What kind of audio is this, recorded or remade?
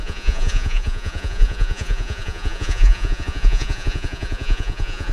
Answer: remade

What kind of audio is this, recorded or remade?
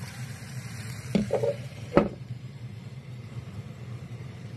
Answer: remade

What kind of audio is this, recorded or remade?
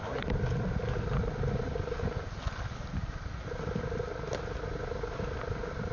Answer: recorded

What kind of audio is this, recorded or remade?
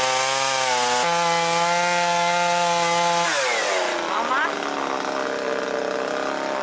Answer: recorded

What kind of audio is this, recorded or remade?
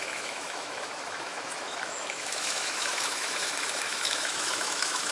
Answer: remade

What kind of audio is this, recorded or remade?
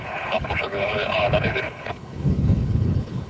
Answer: remade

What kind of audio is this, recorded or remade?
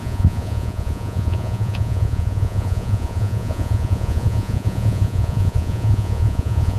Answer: remade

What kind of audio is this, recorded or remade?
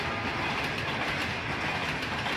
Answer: recorded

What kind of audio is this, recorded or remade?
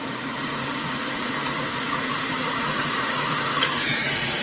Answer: remade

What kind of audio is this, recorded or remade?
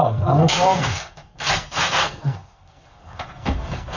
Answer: remade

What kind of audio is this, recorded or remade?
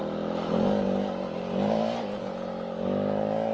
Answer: recorded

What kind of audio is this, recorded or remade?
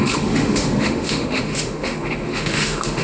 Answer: remade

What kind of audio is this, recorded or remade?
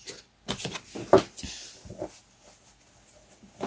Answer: recorded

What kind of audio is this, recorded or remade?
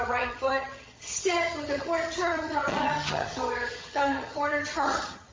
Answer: remade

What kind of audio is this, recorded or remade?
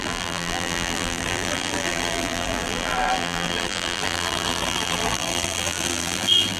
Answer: remade